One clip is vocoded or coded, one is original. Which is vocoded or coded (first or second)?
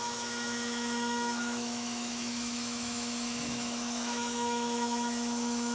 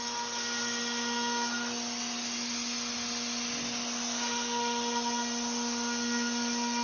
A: first